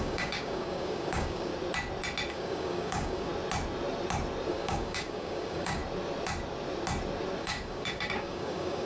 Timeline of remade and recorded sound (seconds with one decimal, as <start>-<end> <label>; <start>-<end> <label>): 0.0-1.5 remade; 1.5-2.3 recorded; 2.3-3.3 remade; 3.3-4.5 recorded; 4.5-5.8 remade; 5.8-7.4 recorded; 7.4-8.9 remade